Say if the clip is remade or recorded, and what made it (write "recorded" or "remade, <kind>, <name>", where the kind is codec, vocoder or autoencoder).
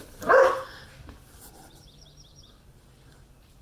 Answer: recorded